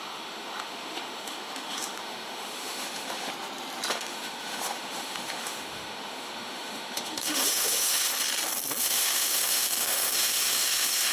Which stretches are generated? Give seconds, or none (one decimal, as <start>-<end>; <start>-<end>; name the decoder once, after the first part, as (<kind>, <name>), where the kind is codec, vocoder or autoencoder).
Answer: 0.0-3.3 (autoencoder, DAC-VAE); 3.9-8.1; 8.8-11.1